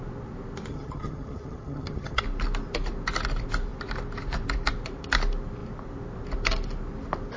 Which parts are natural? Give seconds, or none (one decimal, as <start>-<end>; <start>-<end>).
0.0-0.7; 2.2-7.4